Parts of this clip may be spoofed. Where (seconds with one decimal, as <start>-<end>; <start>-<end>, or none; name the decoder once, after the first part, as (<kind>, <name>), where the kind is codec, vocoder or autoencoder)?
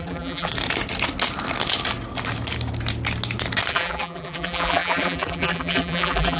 0.0-0.5 (vocoder, BigVGAN v2); 3.7-6.4